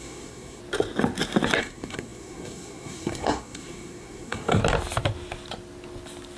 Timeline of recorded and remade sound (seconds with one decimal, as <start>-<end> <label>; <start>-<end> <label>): 0.0-0.6 remade; 0.6-1.6 recorded; 1.6-4.6 remade; 4.6-6.4 recorded